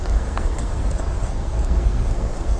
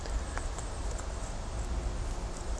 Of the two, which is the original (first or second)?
second